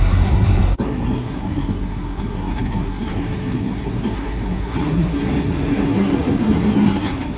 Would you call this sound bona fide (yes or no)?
no